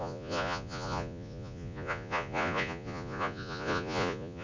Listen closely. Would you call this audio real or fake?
fake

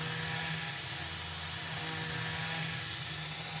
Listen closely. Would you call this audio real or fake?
real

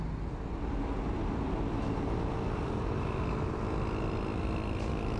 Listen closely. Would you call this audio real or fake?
real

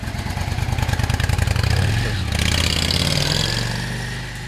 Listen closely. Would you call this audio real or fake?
real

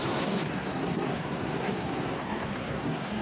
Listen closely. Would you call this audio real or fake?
fake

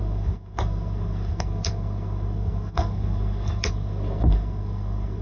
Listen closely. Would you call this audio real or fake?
fake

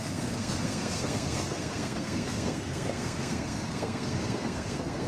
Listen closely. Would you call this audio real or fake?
fake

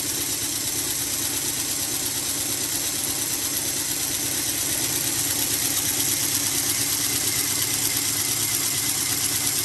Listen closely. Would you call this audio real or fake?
real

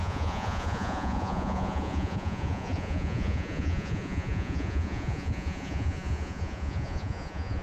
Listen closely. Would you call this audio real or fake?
fake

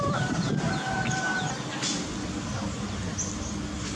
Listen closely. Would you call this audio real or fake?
real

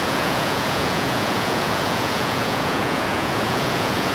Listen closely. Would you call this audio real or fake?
fake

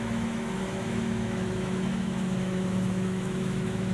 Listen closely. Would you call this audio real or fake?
fake